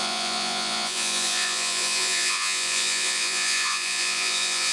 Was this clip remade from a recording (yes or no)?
yes